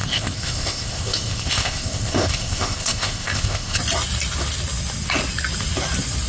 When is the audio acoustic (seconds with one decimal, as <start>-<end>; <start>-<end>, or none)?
3.8-6.3